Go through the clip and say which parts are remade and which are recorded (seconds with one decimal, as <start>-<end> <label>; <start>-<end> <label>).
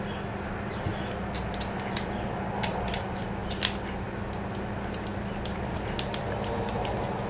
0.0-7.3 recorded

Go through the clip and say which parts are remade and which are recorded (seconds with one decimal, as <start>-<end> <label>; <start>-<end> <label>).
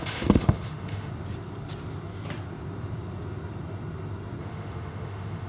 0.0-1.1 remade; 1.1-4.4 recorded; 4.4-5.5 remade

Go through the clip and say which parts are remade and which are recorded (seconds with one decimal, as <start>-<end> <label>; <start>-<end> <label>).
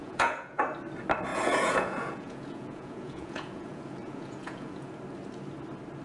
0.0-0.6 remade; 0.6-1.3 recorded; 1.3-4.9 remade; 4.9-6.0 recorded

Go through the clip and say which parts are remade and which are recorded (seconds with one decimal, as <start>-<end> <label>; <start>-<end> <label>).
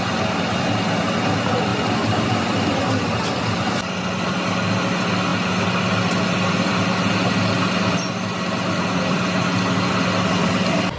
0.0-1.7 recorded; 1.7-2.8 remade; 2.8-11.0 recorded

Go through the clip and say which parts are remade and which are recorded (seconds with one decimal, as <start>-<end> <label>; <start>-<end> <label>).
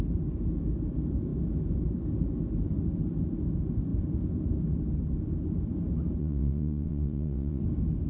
0.0-6.2 recorded; 6.2-7.6 remade; 7.6-8.1 recorded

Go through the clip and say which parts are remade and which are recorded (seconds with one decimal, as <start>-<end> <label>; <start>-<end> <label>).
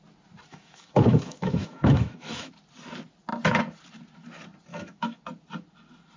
0.0-0.5 recorded; 0.5-2.5 remade; 2.5-4.7 recorded; 4.7-5.2 remade; 5.2-6.2 recorded